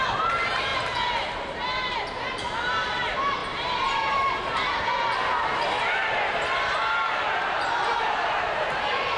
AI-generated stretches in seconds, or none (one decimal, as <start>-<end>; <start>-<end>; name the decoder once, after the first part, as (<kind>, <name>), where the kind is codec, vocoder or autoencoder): 0.0-0.7 (vocoder, BigVGAN v2); 2.7-9.2